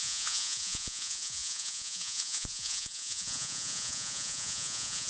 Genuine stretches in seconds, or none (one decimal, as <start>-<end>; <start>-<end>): none